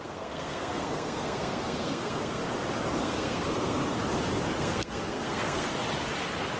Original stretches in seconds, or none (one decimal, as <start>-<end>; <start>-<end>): 2.4-3.0; 3.8-4.6; 5.7-6.6